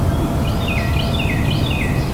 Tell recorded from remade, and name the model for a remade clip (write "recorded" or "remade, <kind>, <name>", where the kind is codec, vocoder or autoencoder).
recorded